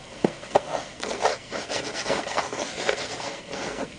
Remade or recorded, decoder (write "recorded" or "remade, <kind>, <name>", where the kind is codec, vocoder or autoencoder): remade, codec, SNAC